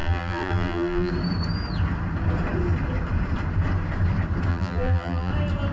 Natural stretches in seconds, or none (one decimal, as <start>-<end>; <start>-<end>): 1.1-4.5; 5.3-5.7